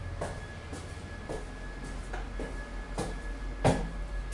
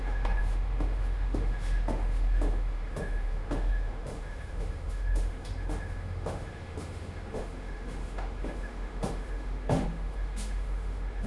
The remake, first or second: second